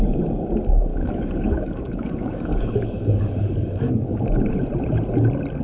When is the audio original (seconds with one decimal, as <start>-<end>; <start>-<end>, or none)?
0.0-0.9; 4.3-5.6